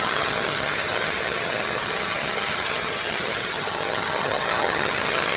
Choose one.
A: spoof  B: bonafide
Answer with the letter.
A